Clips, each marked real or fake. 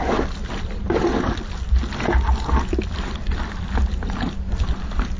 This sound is real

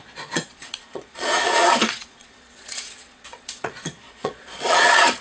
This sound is fake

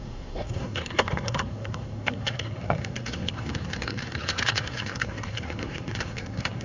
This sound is fake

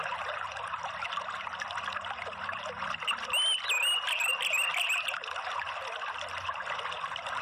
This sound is real